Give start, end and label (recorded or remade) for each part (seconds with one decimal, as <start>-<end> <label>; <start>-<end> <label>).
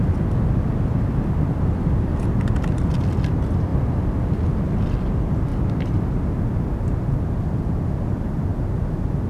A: 0.0-9.3 recorded